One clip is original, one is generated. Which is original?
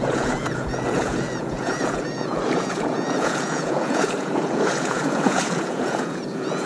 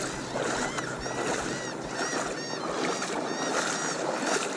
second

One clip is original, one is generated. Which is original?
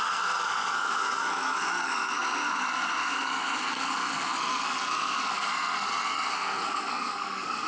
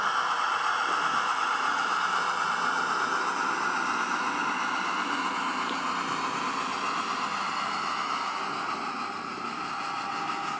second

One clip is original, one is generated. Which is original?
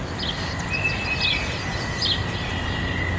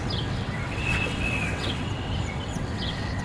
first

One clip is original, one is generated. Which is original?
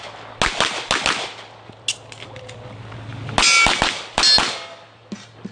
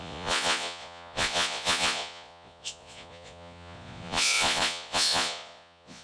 first